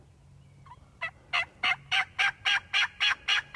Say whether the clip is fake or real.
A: real